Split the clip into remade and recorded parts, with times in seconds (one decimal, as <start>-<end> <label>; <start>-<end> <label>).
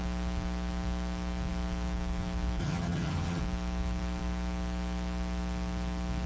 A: 0.0-2.6 recorded; 2.6-3.4 remade; 3.4-6.3 recorded